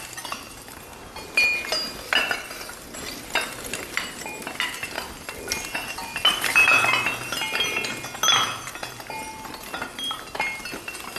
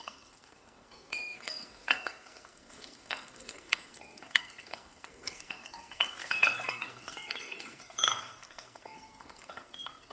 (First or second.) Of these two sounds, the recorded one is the first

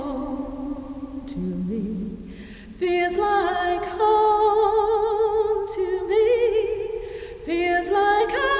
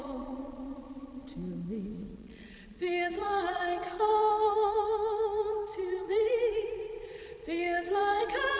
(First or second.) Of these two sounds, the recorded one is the first